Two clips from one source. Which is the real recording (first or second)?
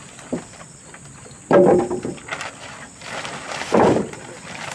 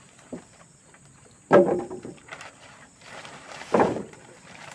first